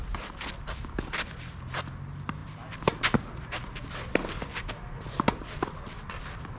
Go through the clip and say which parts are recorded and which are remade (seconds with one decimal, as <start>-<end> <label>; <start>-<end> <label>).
0.0-6.6 recorded